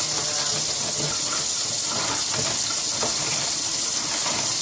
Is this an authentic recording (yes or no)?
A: yes